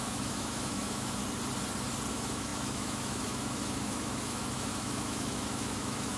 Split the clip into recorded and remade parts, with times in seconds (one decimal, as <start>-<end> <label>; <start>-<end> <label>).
0.0-1.2 remade; 1.2-2.1 recorded; 2.1-6.2 remade